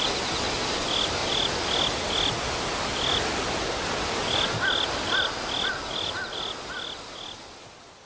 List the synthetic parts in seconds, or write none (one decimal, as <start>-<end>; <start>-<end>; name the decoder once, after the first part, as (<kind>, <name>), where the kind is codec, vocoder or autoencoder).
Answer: none